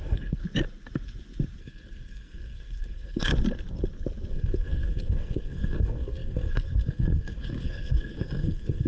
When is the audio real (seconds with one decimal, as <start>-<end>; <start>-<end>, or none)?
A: 0.4-1.6; 3.3-4.3